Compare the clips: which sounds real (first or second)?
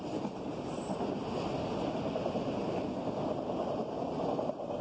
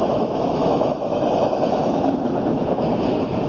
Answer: first